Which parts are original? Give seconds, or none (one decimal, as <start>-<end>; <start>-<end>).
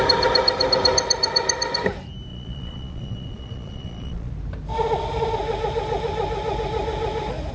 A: 0.0-2.3; 4.3-7.5